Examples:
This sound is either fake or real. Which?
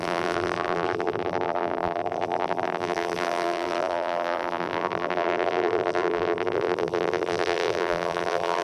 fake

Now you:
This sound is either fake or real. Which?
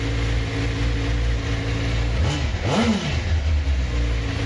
real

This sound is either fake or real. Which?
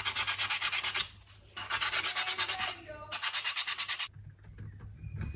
real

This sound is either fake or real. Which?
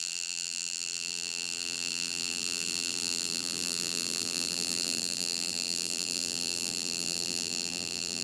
fake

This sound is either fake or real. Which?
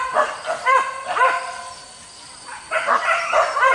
real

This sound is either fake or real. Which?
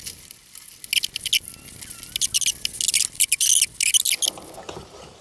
real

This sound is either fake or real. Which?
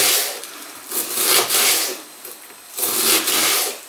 real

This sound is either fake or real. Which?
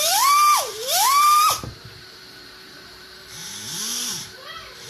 fake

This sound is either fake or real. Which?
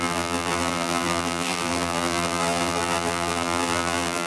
fake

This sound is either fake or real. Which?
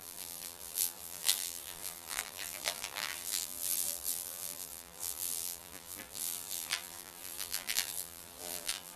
fake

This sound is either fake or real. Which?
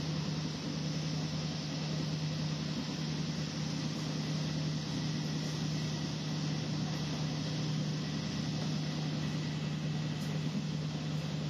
real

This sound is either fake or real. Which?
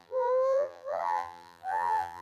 fake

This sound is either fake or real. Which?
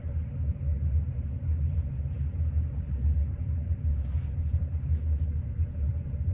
fake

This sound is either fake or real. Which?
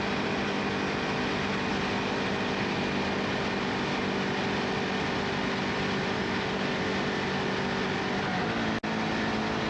real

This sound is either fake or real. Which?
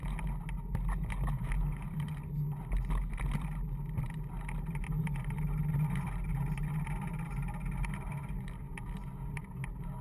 real